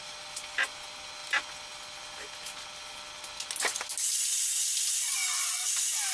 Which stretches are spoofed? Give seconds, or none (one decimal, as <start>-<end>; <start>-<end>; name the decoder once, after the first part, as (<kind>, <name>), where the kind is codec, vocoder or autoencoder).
none